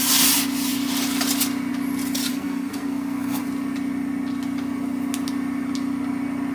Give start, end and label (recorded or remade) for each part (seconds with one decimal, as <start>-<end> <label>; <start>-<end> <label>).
0.0-2.3 recorded; 2.3-3.4 remade; 3.4-6.5 recorded